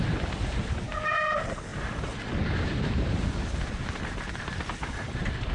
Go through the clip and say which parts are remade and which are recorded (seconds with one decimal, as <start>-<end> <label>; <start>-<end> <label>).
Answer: 0.0-5.5 recorded